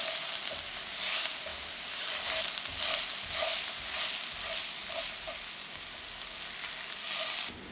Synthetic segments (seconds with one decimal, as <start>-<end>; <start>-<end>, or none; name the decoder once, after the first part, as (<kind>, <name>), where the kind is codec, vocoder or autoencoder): none